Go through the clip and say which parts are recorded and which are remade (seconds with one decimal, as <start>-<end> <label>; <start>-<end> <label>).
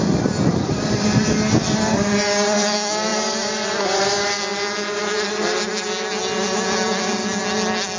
0.0-0.5 recorded; 0.5-1.2 remade; 1.2-3.1 recorded; 3.1-4.4 remade; 4.4-8.0 recorded